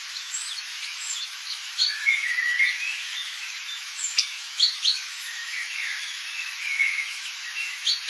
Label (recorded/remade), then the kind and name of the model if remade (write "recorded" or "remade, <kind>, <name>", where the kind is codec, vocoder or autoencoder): remade, autoencoder, DAC-VAE